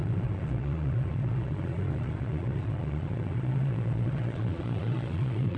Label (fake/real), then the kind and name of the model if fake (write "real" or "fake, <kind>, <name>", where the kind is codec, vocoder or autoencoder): fake, vocoder, Vocos